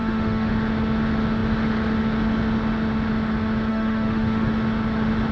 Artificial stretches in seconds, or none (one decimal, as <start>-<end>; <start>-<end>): 0.0-0.5; 3.7-4.5

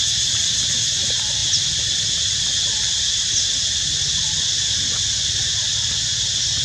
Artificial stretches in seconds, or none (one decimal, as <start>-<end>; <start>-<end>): none